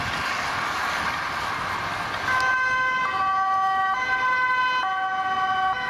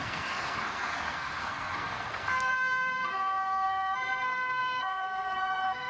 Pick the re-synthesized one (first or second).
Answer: second